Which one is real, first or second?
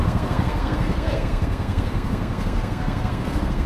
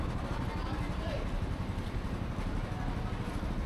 second